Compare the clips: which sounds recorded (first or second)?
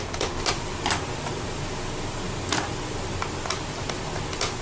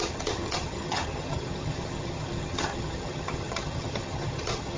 first